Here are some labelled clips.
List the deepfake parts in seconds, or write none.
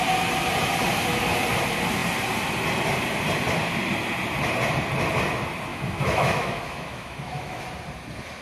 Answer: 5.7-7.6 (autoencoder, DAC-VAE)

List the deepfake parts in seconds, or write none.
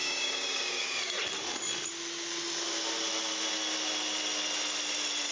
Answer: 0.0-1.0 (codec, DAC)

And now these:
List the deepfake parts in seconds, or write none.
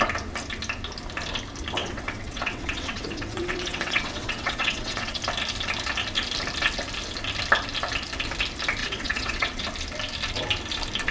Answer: 1.8-5.2 (vocoder, WaveNeXt); 8.8-9.6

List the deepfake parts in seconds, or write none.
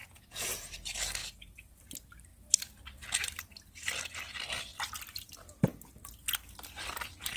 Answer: 0.0-0.7 (vocoder, Vocos); 1.2-1.7